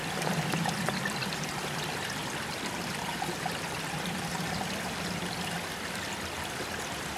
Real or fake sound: fake